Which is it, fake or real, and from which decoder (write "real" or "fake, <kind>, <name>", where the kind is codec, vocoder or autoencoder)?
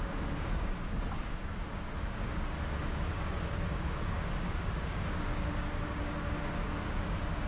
fake, codec, DAC